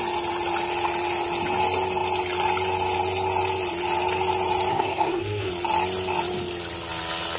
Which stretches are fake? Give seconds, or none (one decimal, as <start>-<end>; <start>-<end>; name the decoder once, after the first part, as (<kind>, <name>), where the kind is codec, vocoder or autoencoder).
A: 4.7-5.5 (codec, SNAC)